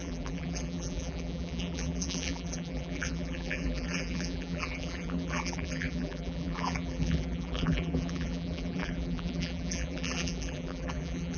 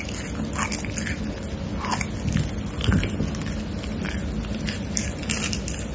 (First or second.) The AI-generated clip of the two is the first